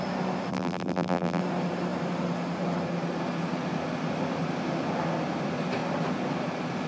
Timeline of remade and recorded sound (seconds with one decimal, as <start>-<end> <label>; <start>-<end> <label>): 0.0-0.5 recorded; 0.5-1.4 remade; 1.4-6.9 recorded